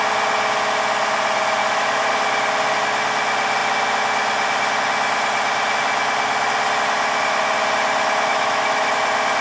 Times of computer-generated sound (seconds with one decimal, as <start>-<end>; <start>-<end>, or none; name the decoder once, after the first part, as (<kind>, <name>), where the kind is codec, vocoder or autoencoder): 1.6-2.1 (autoencoder, DAC-VAE); 8.3-8.9

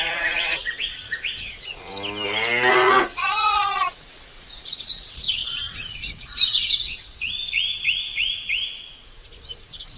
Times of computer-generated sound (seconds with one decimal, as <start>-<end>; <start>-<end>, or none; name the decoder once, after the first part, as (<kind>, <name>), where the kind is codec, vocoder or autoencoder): 0.0-1.9 (vocoder, Vocos); 2.7-10.0

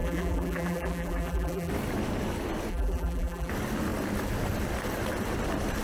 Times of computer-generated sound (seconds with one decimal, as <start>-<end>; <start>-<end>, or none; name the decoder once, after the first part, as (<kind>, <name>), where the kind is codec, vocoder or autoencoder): 0.0-1.7 (vocoder, BigVGAN v2); 2.7-3.5

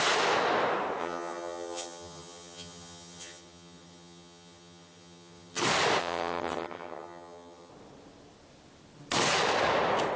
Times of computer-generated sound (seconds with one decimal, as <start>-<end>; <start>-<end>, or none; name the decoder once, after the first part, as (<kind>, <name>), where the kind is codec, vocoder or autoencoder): 1.0-5.6 (vocoder, HiFi-GAN); 6.0-7.7

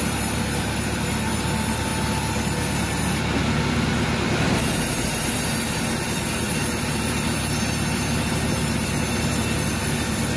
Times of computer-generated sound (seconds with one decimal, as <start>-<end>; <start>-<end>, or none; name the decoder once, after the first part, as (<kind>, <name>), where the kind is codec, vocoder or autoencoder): none

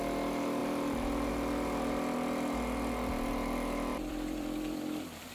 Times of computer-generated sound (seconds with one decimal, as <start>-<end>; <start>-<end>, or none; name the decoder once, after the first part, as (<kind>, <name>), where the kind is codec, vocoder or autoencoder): 0.6-1.3 (vocoder, BigVGAN v2); 3.9-5.3

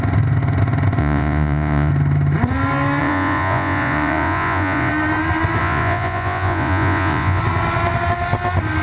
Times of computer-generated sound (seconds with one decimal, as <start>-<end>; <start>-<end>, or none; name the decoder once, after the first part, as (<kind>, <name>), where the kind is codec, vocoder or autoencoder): 1.0-1.9 (vocoder, Vocos); 3.0-4.9; 5.6-7.4